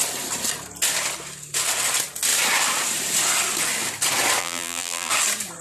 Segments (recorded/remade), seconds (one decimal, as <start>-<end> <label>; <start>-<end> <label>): 0.0-4.4 recorded; 4.4-5.1 remade; 5.1-5.6 recorded